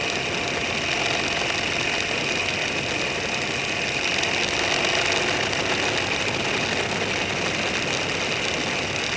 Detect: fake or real real